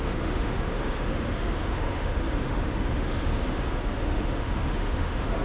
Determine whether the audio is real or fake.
fake